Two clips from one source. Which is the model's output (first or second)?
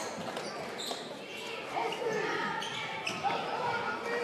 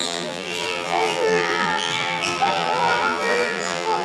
second